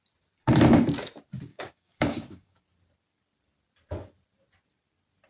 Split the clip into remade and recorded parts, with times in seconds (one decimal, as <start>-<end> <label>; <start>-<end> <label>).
0.0-1.5 recorded; 1.5-2.6 remade; 2.6-5.3 recorded